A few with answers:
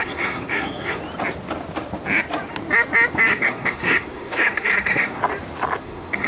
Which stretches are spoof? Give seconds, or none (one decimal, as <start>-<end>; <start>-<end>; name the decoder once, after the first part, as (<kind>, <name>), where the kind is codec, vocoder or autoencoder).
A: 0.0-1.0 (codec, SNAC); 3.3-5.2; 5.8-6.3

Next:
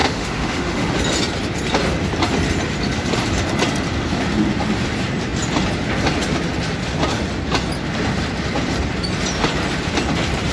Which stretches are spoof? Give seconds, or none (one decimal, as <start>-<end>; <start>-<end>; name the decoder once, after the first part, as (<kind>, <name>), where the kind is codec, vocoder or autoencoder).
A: 0.0-0.9 (autoencoder, DAC-VAE)

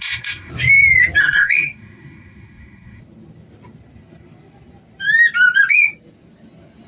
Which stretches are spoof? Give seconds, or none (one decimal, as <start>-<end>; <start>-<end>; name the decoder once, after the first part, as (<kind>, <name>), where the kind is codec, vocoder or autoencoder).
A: 0.0-0.5 (codec, SNAC); 1.2-3.0

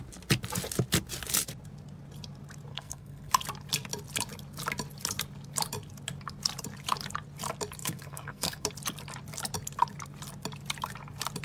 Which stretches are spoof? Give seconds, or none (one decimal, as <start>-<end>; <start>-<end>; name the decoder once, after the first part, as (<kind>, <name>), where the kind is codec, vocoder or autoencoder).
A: 2.7-3.3 (codec, SNAC); 7.8-8.7